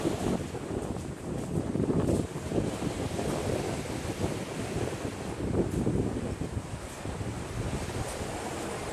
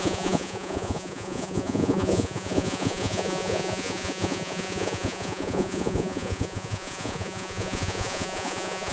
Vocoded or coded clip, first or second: second